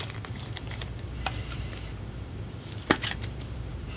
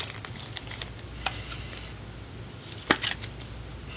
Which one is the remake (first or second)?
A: first